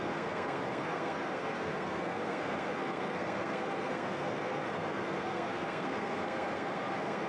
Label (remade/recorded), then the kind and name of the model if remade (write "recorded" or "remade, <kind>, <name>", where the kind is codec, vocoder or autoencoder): remade, codec, SNAC